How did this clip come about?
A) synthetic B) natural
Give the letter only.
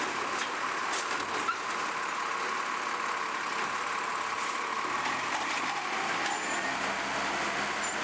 B